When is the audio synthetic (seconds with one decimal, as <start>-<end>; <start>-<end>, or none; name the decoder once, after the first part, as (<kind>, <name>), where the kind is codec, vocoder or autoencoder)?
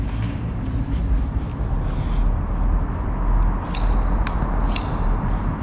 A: 0.0-1.5 (vocoder, BigVGAN v2); 4.9-5.6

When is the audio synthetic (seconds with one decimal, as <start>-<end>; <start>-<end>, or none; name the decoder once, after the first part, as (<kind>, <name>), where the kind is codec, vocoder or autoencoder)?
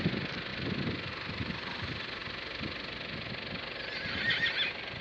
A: none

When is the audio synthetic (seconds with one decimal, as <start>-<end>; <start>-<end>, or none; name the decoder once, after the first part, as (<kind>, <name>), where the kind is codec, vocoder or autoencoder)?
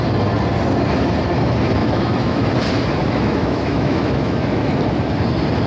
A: 1.8-2.5 (autoencoder, DAC-VAE); 3.0-4.7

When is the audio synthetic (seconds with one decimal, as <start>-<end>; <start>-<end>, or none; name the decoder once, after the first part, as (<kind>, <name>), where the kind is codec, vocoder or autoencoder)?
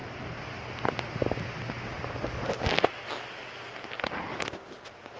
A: none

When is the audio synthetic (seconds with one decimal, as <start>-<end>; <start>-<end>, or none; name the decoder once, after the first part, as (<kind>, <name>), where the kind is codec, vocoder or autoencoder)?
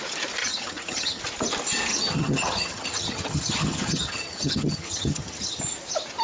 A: 0.4-1.2 (vocoder, HiFi-GAN); 1.9-5.6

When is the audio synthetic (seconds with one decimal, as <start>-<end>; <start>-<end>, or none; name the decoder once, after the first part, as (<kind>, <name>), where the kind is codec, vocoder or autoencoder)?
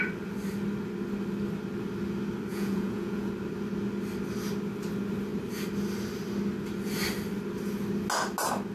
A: 2.5-3.3 (vocoder, Vocos)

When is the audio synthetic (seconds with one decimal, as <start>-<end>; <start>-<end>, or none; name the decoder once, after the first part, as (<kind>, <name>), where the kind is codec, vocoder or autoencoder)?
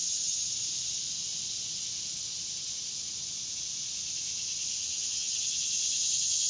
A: 0.0-0.5 (vocoder, HiFi-GAN); 4.8-5.4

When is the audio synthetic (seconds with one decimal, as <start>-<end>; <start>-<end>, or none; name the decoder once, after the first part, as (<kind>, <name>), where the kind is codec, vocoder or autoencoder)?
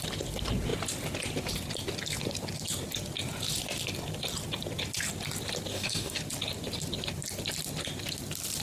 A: 5.7-6.2 (codec, DAC)